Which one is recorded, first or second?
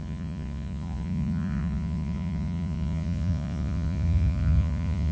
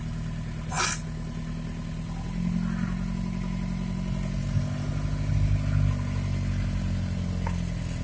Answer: second